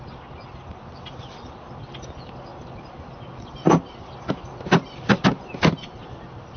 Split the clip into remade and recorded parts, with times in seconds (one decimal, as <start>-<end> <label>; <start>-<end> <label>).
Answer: 0.0-6.6 recorded